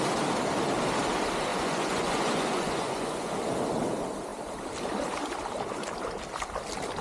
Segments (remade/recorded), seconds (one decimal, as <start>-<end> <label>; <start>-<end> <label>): 0.0-1.5 recorded; 1.5-3.3 remade; 3.3-7.0 recorded